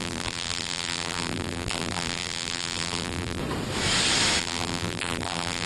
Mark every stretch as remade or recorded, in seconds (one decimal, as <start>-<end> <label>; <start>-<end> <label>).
0.0-3.4 remade; 3.4-4.4 recorded; 4.4-5.7 remade